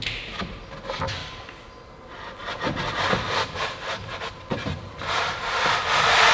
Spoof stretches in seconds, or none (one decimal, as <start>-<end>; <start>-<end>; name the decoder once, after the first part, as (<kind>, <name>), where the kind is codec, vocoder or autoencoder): 1.2-1.9 (vocoder, BigVGAN v2)